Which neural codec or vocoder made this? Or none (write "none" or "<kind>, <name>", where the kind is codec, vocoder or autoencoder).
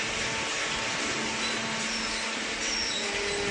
none